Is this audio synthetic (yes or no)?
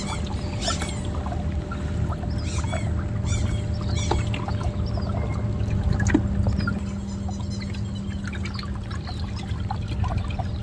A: no